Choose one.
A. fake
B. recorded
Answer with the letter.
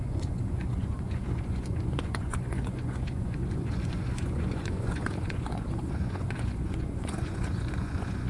A